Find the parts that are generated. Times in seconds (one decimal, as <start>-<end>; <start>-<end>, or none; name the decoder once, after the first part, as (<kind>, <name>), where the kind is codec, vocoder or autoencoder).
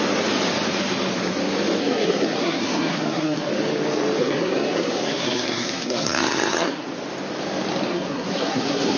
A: 1.8-3.5 (codec, SNAC); 4.2-6.9; 7.9-9.0